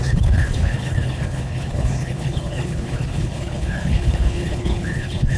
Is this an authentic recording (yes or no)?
no